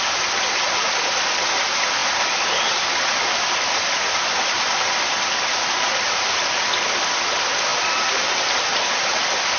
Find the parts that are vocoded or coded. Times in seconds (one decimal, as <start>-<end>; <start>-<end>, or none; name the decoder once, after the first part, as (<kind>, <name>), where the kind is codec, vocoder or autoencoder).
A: none